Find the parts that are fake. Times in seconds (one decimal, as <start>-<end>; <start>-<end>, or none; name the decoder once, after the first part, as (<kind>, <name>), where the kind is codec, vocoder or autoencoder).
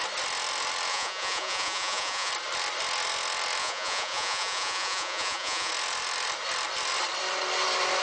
0.9-2.3 (vocoder, Vocos); 3.6-5.7